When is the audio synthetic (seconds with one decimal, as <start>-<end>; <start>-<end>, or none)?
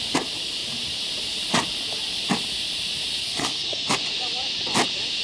3.2-3.9